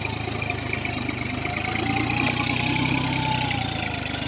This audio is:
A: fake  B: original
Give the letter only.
B